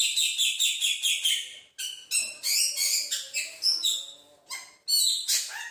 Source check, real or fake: real